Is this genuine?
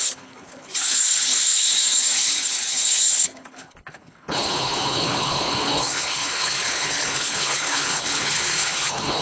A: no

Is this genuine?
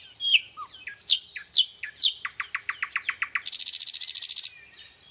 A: yes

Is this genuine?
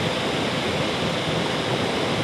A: yes